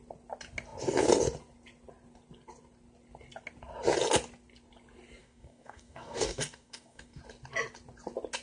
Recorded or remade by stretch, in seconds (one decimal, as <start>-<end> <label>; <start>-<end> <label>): 0.0-5.2 recorded; 5.2-7.2 remade; 7.2-8.4 recorded